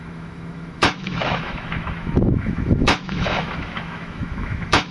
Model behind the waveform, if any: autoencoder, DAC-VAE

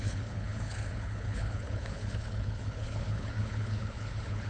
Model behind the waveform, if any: codec, HILCodec